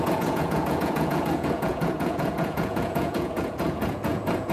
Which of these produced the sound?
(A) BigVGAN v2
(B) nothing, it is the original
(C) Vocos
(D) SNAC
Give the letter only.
C